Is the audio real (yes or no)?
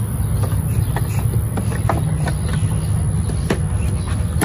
yes